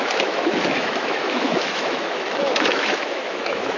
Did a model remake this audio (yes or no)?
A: yes